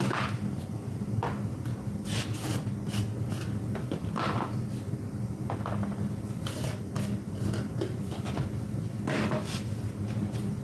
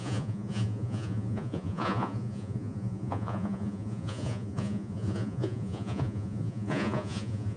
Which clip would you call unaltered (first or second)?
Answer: first